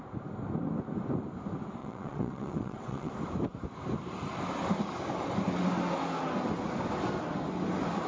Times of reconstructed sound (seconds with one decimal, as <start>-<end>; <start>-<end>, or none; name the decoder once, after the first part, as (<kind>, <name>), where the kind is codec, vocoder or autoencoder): 1.8-3.1 (vocoder, WaveNeXt)

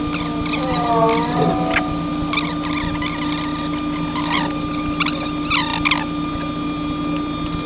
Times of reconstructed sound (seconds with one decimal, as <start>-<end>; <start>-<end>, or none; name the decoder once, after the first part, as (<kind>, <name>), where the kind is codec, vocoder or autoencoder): none

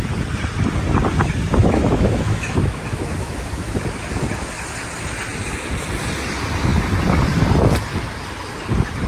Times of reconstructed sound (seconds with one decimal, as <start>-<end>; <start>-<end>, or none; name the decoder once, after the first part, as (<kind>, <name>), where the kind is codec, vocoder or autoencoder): 1.6-3.8 (autoencoder, DAC-VAE)

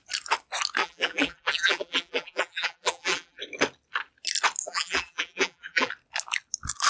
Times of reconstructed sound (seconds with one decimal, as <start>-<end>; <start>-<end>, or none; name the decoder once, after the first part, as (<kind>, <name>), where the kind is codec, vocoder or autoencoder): 0.8-3.4 (vocoder, BigVGAN v2); 4.6-5.9